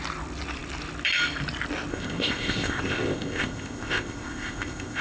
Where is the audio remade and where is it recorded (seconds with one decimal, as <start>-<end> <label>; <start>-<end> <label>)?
0.0-1.9 recorded; 1.9-5.0 remade

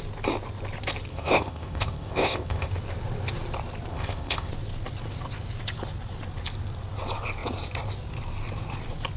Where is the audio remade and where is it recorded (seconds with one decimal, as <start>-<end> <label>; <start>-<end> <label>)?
0.0-1.1 recorded; 1.1-2.7 remade; 2.7-3.9 recorded; 3.9-4.5 remade; 4.5-9.2 recorded